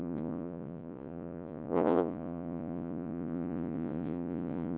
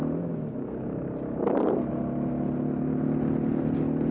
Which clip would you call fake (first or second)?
first